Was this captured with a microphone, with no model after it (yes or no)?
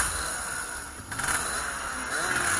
yes